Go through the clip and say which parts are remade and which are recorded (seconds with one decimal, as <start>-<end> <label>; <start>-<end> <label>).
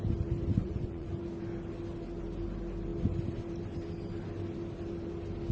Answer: 0.0-0.6 recorded; 0.6-1.1 remade; 1.1-5.5 recorded